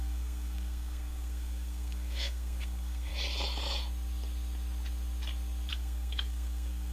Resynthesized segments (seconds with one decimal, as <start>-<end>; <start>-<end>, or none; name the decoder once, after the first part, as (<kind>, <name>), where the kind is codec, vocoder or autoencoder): 0.0-3.1 (codec, SNAC); 5.7-6.9